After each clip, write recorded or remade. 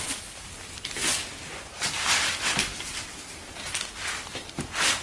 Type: remade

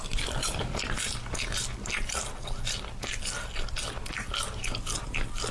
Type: recorded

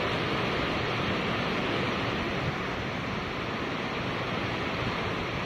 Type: recorded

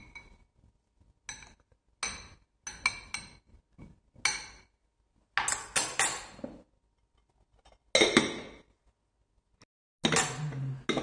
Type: recorded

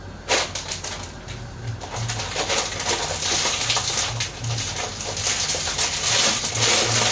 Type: recorded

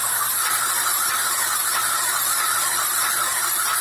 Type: remade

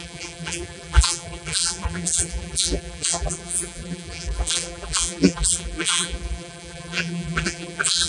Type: remade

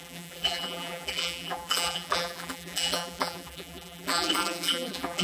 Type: remade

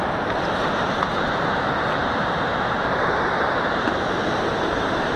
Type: remade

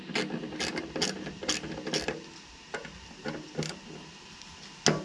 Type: recorded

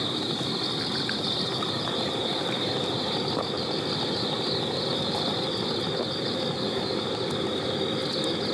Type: recorded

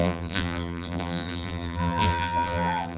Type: remade